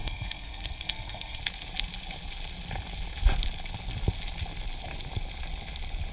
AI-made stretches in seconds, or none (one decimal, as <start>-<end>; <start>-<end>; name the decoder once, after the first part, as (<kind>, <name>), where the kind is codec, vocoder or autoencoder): 0.0-1.4 (codec, SNAC)